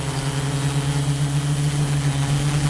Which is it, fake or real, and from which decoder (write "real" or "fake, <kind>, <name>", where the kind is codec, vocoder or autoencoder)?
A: real